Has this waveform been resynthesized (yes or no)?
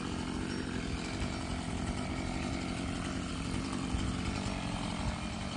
no